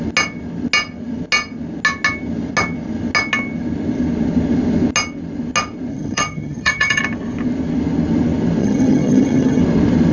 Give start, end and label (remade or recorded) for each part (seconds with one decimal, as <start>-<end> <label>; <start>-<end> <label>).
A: 0.0-5.9 recorded; 5.9-7.0 remade; 7.0-8.6 recorded; 8.6-9.6 remade; 9.6-10.1 recorded